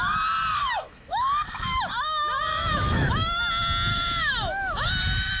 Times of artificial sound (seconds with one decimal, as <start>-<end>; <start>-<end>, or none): 0.6-1.9; 2.5-3.4; 3.9-5.4

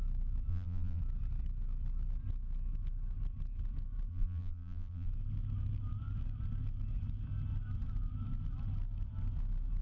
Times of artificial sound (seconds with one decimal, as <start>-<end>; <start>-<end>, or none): 0.5-1.0; 4.1-5.1